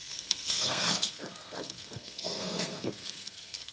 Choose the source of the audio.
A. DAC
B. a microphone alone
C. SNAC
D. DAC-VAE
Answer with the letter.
C